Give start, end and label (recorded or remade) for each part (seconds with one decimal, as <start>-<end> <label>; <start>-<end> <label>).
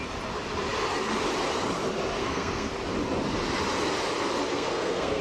0.0-2.2 recorded; 2.2-2.7 remade; 2.7-4.5 recorded; 4.5-5.2 remade